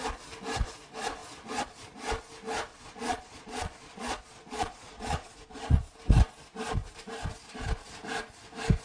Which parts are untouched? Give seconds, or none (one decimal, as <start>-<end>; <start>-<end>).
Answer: 0.0-2.7; 5.8-8.8